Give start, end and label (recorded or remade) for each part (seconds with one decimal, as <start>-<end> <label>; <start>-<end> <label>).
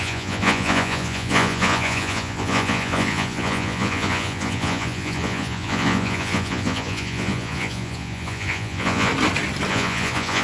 0.0-9.1 remade; 9.1-9.7 recorded; 9.7-10.4 remade